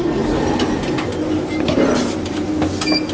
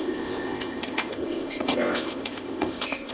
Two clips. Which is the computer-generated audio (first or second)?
second